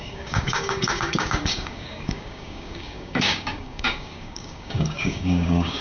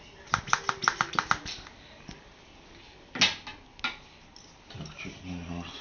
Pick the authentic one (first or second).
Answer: second